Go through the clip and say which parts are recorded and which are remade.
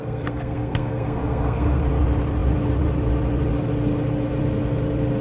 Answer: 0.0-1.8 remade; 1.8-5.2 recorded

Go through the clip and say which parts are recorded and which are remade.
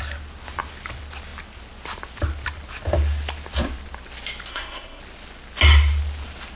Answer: 0.0-4.5 recorded; 4.5-5.0 remade; 5.0-6.6 recorded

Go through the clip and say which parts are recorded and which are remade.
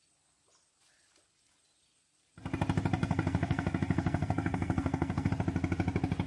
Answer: 0.0-3.0 recorded; 3.0-5.3 remade; 5.3-6.3 recorded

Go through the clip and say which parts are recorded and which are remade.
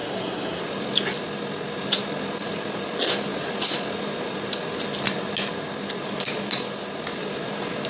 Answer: 0.0-0.6 remade; 0.6-7.9 recorded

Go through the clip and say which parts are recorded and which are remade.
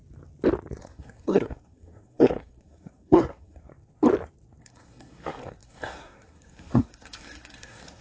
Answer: 0.0-0.8 recorded; 0.8-3.7 remade; 3.7-4.6 recorded; 4.6-8.0 remade